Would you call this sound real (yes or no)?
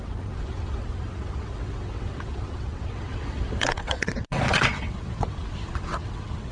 no